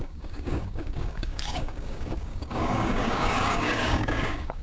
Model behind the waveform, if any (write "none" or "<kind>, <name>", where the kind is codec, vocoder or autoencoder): codec, DAC